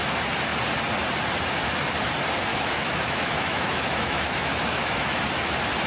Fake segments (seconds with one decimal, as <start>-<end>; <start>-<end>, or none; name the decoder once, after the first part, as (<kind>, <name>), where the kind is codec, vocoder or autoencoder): 2.5-5.2 (autoencoder, DAC-VAE)